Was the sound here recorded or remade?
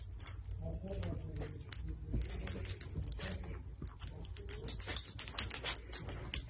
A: recorded